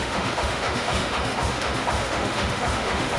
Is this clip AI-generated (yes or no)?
yes